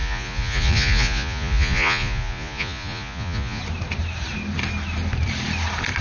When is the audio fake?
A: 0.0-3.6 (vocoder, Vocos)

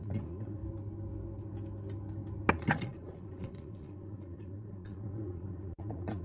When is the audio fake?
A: 0.0-0.6 (vocoder, Vocos); 2.5-6.2

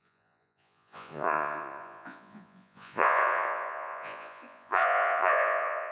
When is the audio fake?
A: 0.0-5.9 (vocoder, Vocos)

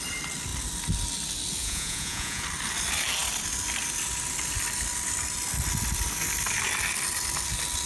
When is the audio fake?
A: 1.6-2.4 (vocoder, Vocos)

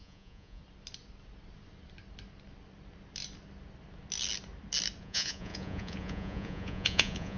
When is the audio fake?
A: 0.0-0.6 (vocoder, Vocos); 5.0-7.4

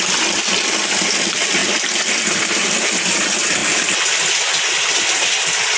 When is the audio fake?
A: none

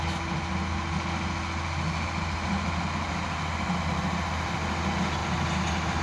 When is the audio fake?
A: none

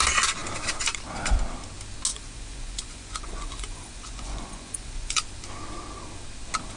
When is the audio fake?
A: 2.1-5.2 (vocoder, Vocos)